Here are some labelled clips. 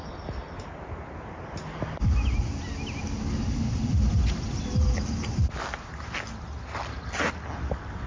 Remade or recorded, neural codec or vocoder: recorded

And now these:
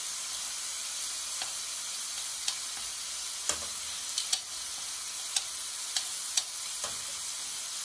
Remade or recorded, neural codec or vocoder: recorded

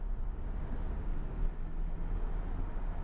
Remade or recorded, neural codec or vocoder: recorded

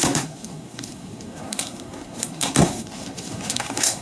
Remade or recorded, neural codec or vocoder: remade, codec, SNAC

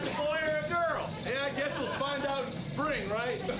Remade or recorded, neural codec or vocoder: recorded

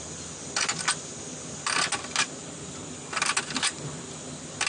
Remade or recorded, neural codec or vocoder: recorded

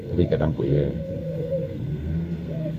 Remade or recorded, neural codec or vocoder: remade, codec, SNAC